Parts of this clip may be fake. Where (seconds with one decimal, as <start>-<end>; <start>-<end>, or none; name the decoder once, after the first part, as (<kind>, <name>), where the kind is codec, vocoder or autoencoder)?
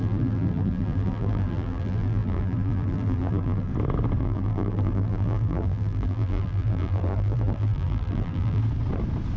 0.0-3.7 (vocoder, BigVGAN v2); 4.2-8.6